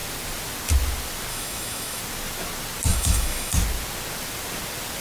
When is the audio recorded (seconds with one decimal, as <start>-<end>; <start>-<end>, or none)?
0.0-1.3; 2.0-2.9; 3.5-5.0

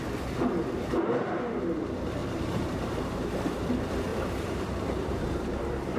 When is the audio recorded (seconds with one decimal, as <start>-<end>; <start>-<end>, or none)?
0.0-2.2; 3.3-4.1; 5.1-6.0